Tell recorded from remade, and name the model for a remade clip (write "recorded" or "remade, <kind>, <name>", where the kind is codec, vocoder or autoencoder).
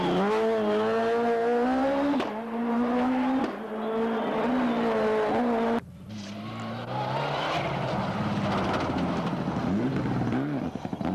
recorded